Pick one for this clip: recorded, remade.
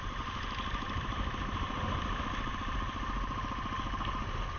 recorded